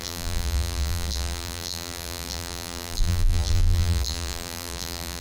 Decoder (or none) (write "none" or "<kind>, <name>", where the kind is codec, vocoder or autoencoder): vocoder, BigVGAN v2